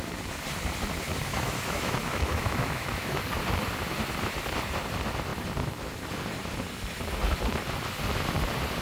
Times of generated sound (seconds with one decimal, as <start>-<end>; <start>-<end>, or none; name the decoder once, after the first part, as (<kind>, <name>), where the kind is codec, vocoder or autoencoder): 1.3-3.2 (autoencoder, DAC-VAE)